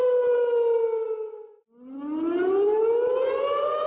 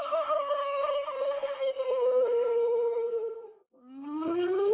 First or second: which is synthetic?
second